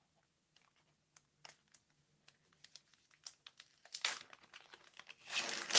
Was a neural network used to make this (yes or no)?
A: no